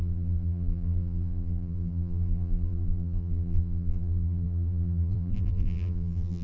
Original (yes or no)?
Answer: no